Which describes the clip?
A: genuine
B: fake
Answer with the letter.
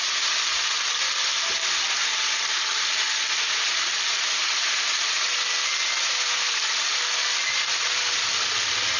A